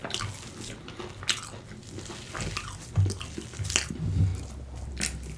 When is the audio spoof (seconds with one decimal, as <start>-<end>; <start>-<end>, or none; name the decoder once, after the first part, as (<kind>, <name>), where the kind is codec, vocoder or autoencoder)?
none